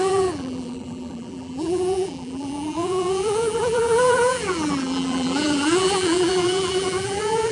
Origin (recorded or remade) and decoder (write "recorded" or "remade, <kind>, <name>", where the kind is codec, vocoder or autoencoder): remade, vocoder, BigVGAN v2